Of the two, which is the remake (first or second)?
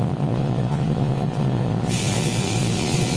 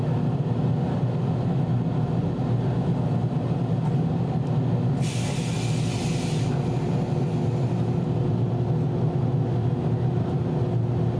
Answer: first